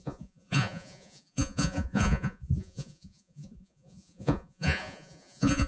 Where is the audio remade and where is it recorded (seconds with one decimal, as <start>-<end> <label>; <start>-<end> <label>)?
0.0-5.7 remade